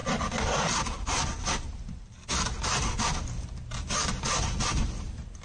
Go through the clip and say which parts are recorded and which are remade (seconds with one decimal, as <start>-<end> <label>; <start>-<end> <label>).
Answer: 0.0-5.4 recorded